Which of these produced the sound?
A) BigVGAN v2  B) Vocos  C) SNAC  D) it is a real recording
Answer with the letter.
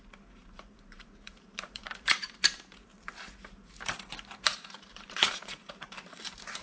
A